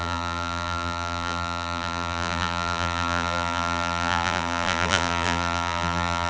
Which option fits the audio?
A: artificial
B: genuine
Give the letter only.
A